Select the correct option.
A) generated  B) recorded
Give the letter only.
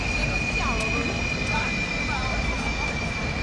B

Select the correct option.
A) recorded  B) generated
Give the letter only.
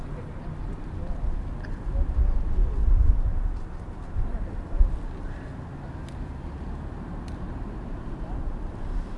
A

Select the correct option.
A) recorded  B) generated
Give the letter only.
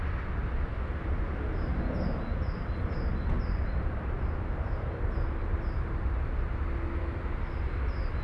A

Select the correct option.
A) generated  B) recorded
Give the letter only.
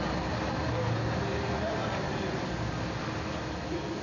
B